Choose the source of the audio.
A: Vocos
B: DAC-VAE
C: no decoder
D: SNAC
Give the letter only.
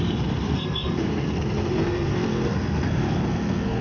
D